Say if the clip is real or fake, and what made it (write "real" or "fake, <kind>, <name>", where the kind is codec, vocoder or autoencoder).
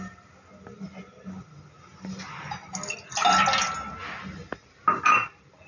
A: real